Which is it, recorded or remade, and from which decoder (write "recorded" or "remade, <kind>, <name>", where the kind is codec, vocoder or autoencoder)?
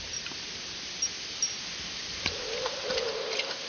recorded